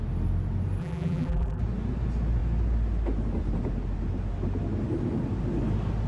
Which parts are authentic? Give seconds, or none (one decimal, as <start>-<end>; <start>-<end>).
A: 0.0-0.8; 1.6-6.1